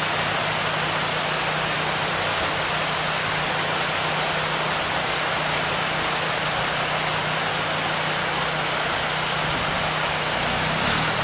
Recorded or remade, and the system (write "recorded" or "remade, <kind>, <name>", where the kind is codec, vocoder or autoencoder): recorded